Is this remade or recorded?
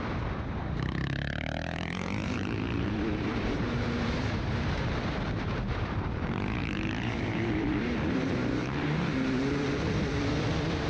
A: remade